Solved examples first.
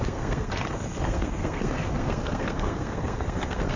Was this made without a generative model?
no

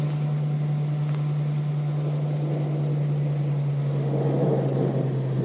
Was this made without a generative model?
yes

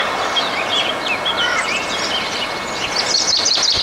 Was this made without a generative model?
yes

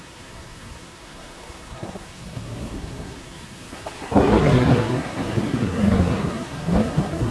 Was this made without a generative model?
no